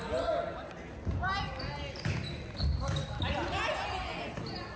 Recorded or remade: recorded